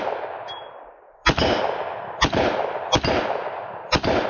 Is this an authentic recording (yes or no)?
yes